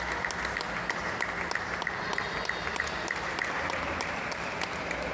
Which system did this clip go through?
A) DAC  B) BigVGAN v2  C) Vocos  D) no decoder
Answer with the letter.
D